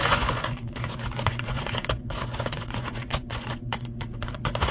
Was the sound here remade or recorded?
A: remade